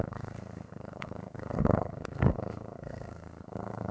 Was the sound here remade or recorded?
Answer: remade